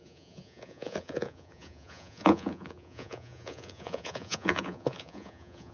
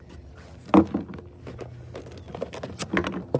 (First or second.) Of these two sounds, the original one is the second